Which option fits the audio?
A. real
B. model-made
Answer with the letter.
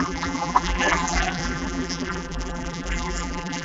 B